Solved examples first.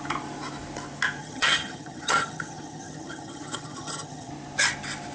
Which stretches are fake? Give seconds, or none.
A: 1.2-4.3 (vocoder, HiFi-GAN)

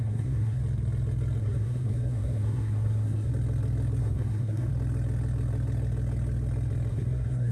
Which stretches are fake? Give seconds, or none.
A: 0.0-0.6 (codec, SNAC); 1.4-3.3; 4.0-4.7; 6.9-7.5

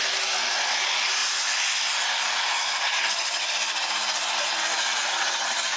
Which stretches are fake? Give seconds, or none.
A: 3.0-3.5 (vocoder, HiFi-GAN); 5.1-5.8

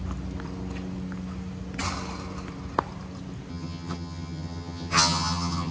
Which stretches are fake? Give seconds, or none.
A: 3.5-5.7 (vocoder, HiFi-GAN)